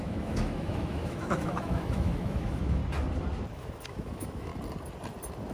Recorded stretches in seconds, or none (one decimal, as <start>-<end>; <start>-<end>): 2.8-3.5; 4.5-5.5